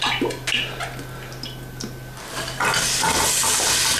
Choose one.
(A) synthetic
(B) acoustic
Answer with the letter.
B